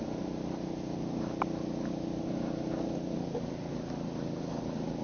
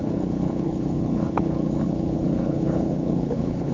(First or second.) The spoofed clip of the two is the second